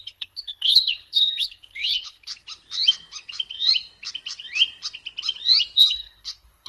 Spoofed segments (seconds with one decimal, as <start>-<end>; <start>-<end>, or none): 0.0-2.3; 5.8-6.7